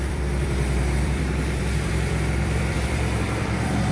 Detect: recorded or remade remade